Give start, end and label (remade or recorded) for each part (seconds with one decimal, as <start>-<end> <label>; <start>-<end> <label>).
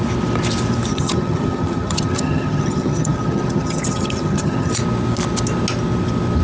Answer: 0.0-0.9 recorded; 0.9-4.7 remade; 4.7-6.4 recorded